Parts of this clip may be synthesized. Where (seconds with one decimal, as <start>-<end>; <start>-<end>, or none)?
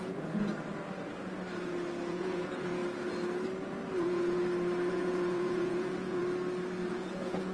0.0-0.5; 2.1-2.8; 4.0-4.4; 4.9-6.2; 6.9-7.5